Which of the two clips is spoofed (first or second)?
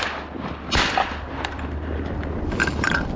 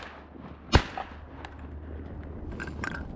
first